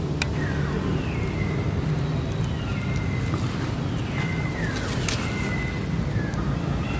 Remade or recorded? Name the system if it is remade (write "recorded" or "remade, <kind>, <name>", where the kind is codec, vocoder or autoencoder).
recorded